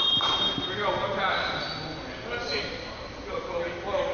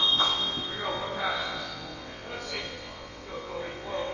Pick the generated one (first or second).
second